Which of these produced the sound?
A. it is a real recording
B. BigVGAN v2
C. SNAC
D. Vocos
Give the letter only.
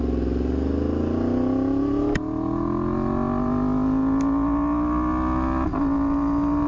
A